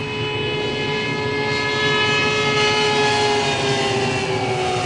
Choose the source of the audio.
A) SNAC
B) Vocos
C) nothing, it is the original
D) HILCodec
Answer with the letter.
C